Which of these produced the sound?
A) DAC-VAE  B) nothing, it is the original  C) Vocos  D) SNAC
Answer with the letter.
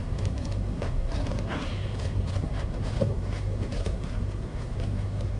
D